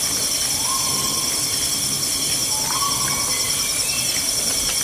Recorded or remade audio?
recorded